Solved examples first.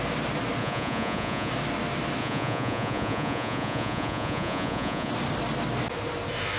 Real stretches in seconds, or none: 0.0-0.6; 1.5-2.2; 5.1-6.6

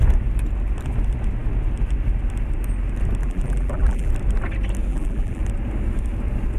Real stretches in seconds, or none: 0.0-3.2; 4.1-4.9; 5.4-6.6

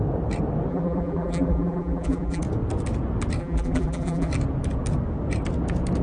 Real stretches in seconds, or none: 0.0-0.7; 2.4-3.4; 4.3-6.0

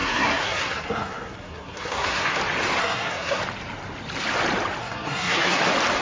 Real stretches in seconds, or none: 2.4-2.8; 3.4-4.8; 5.6-6.0

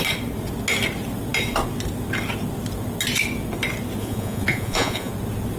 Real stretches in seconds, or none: 0.0-4.0; 5.1-5.6

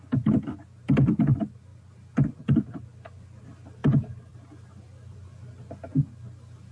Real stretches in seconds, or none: 0.0-6.7

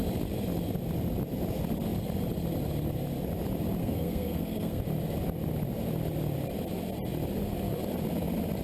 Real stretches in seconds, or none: 0.0-3.8; 4.8-8.6

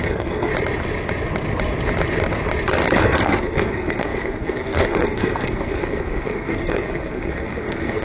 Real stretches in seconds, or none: 0.5-3.0